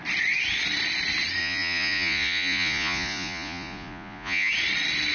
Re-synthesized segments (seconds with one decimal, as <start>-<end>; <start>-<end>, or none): 1.4-4.5